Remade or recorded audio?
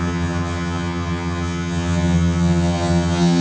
remade